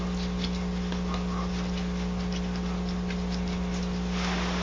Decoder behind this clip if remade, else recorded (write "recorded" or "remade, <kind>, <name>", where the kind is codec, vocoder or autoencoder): recorded